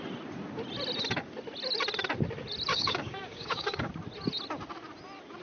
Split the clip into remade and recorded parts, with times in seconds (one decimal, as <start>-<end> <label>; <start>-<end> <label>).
0.0-2.7 recorded; 2.7-3.9 remade; 3.9-5.4 recorded